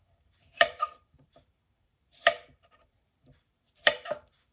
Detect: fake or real fake